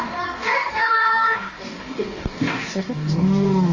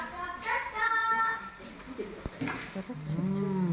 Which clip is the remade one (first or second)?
first